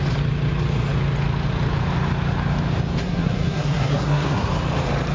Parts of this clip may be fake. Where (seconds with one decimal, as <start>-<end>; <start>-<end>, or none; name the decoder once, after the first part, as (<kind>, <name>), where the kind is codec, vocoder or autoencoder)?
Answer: 3.0-4.5 (codec, SNAC)